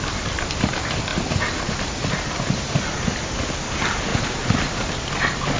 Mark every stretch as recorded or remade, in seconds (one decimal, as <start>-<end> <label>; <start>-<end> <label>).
0.0-1.1 recorded; 1.1-2.9 remade; 2.9-4.1 recorded; 4.1-4.7 remade; 4.7-5.6 recorded